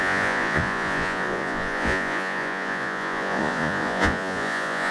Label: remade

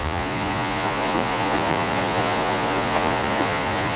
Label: remade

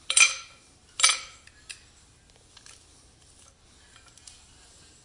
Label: recorded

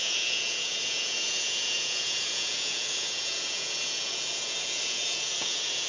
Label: remade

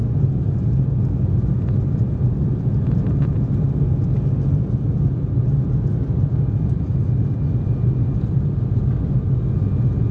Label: recorded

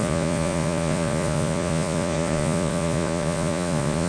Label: remade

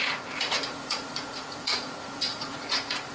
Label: remade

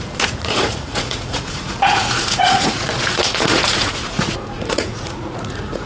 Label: remade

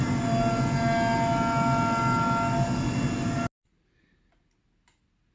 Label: recorded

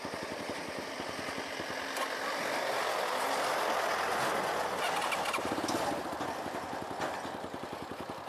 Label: recorded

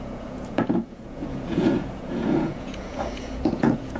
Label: remade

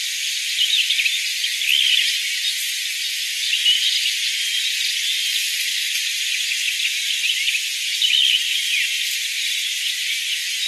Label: recorded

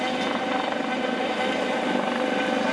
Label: recorded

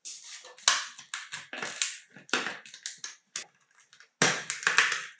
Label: recorded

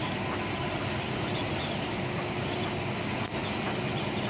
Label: recorded